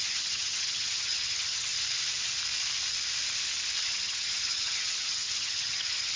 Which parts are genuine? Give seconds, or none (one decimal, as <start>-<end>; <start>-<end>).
1.7-3.8